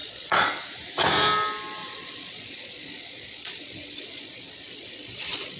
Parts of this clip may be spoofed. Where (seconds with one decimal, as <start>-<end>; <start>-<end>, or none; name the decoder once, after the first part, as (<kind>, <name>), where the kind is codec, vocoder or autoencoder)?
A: 0.0-0.5 (vocoder, Vocos); 1.8-5.6